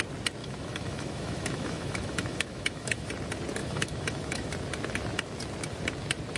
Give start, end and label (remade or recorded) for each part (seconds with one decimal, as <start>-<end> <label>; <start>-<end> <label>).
0.0-0.4 recorded; 0.4-3.1 remade; 3.1-3.6 recorded; 3.6-4.5 remade; 4.5-6.4 recorded